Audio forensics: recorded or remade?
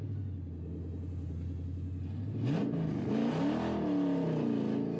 recorded